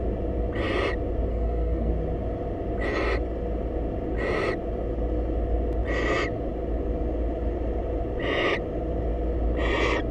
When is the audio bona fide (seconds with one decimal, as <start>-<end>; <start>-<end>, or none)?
0.0-1.3; 1.9-10.1